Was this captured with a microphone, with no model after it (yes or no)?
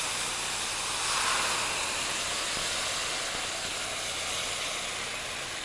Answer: yes